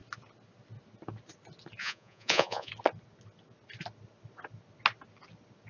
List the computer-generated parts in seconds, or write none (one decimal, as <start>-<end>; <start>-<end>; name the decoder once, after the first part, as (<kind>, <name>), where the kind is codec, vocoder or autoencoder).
1.8-2.7 (vocoder, Vocos)